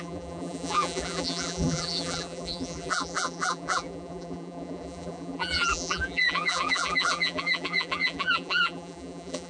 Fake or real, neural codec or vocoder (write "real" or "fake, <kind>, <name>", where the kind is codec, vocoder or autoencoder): fake, vocoder, BigVGAN v2